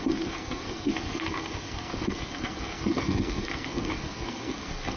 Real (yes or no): no